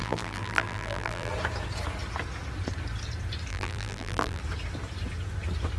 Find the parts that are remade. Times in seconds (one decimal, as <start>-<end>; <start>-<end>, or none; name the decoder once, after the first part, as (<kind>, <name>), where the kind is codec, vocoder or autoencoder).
0.0-1.3 (vocoder, BigVGAN v2); 3.5-4.4